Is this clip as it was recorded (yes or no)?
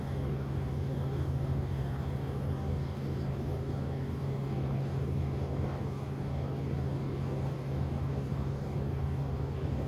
no